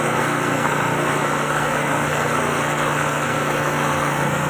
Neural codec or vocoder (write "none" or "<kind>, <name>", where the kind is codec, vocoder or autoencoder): codec, SNAC